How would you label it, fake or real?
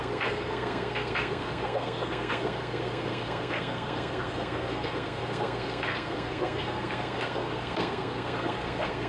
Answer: fake